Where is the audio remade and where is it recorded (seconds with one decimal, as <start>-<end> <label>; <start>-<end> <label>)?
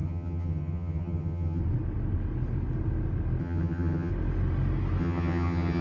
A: 0.0-1.6 remade; 1.6-3.4 recorded; 3.4-4.1 remade; 4.1-5.0 recorded; 5.0-5.8 remade